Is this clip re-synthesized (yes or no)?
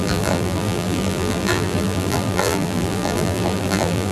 yes